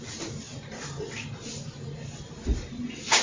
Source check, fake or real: real